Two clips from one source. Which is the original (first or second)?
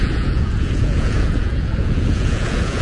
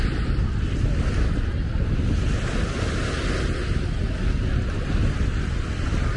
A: second